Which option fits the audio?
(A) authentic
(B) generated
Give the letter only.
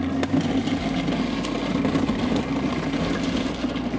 A